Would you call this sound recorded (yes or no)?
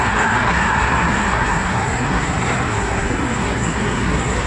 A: no